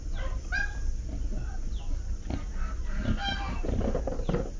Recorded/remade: recorded